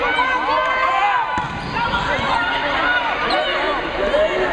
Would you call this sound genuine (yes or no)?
yes